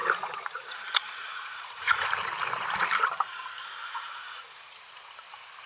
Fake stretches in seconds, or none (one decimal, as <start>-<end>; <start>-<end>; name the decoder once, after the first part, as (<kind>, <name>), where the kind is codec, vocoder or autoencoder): 0.0-2.1 (vocoder, Vocos); 3.6-4.8